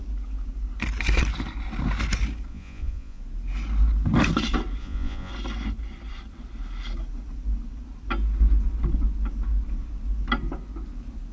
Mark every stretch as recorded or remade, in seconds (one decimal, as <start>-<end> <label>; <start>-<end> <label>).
0.0-2.5 recorded; 2.5-3.2 remade; 3.2-4.8 recorded; 4.8-5.3 remade; 5.3-11.3 recorded